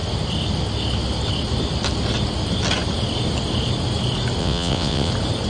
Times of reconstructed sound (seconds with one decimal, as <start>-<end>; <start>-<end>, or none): 4.4-5.1